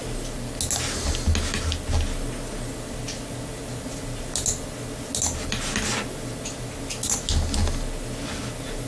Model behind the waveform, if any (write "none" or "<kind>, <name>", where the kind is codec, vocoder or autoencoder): none